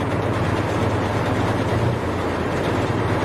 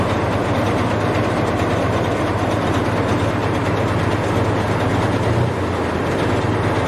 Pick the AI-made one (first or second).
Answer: first